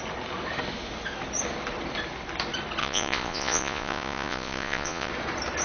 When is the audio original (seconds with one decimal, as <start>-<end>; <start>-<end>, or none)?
0.0-2.8; 5.1-5.6